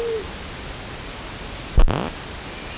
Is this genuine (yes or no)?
yes